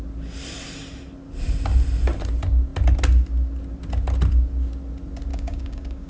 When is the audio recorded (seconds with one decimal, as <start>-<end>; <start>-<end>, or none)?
0.0-5.3